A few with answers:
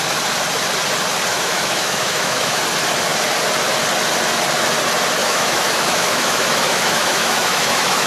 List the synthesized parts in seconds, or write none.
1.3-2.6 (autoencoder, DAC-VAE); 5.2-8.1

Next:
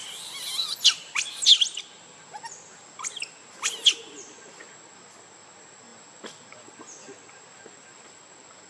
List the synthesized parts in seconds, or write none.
none

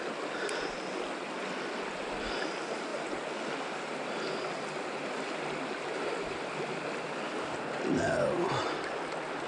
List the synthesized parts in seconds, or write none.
none